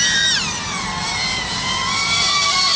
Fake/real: real